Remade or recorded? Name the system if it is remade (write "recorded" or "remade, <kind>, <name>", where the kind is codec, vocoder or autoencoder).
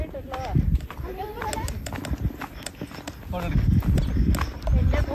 recorded